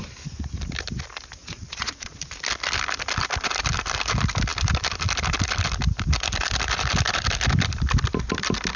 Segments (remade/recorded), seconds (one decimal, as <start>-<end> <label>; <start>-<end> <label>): 0.0-1.4 recorded; 1.4-2.2 remade; 2.2-8.8 recorded